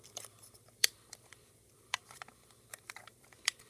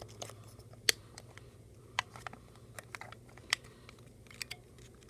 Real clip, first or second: second